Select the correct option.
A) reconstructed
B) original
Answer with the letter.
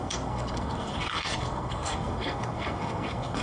A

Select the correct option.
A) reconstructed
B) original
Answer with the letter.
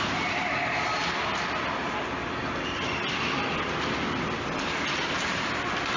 B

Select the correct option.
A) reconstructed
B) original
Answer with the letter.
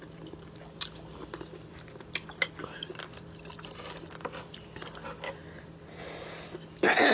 B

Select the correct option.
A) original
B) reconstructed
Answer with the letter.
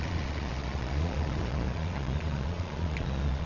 B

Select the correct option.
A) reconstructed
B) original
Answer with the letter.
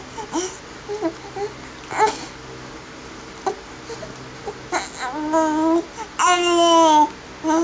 B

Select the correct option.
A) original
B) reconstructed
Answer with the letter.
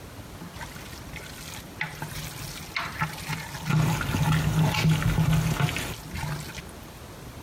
A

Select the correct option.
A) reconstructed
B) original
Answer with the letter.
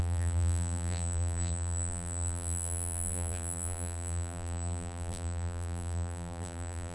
A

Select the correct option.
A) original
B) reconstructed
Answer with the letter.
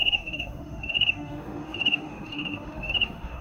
B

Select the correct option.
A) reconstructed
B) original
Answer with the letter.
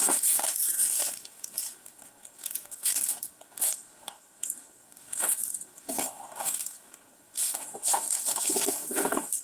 A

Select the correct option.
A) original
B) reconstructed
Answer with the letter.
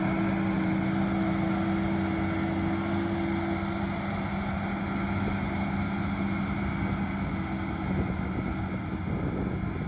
A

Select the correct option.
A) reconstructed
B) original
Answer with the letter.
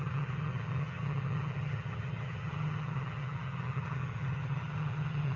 A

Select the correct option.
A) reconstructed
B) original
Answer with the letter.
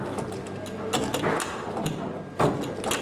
B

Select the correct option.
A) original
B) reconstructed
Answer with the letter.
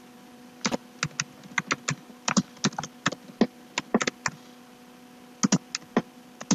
A